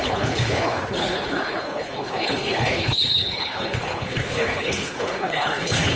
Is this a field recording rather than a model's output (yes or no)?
no